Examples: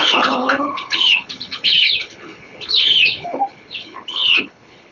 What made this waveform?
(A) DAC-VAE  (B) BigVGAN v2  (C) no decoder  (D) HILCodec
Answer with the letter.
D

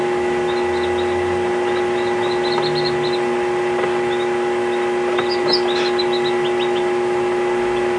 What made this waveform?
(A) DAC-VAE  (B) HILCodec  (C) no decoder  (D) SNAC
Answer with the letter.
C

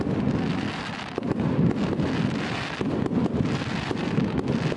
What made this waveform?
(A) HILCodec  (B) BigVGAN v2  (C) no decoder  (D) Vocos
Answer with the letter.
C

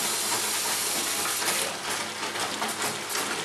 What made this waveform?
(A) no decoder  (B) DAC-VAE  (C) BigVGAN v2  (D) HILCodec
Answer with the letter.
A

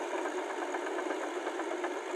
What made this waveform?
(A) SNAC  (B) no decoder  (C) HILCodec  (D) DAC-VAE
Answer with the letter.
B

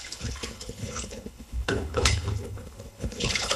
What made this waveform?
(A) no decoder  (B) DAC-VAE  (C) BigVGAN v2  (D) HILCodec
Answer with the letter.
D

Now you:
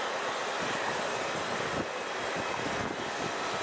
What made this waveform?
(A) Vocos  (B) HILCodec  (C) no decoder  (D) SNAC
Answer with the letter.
C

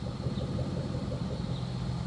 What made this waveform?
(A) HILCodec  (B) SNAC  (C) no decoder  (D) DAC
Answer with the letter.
C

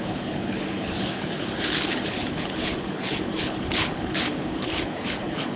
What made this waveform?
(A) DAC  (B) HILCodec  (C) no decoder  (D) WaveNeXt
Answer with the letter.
B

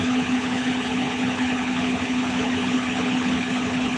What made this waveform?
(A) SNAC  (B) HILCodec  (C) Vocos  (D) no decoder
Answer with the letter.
B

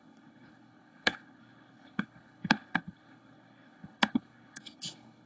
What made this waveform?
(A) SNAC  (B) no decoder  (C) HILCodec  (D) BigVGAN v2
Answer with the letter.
C